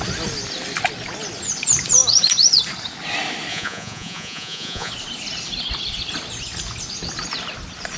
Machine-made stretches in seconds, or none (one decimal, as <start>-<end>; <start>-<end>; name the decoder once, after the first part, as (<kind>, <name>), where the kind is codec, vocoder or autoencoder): 3.5-4.9 (vocoder, Vocos)